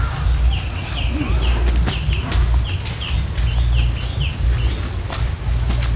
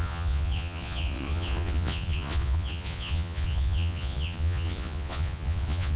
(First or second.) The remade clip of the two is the second